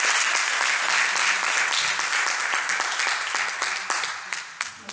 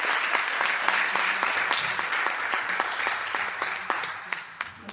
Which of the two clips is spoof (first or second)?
second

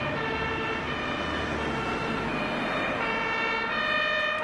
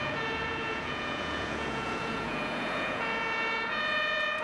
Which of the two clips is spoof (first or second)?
second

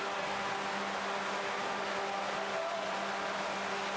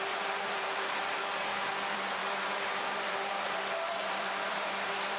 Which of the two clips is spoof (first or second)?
second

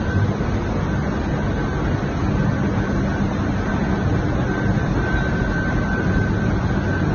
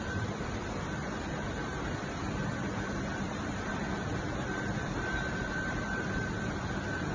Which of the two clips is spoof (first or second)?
second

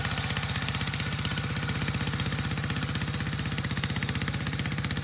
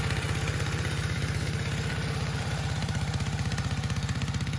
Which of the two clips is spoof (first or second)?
second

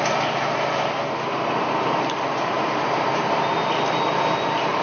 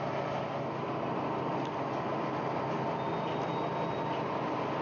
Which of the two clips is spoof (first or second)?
first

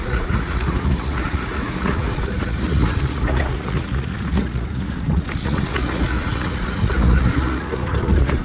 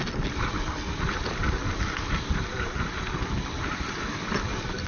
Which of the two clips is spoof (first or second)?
first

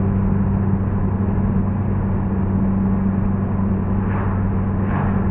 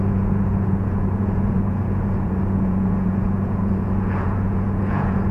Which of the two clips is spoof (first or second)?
second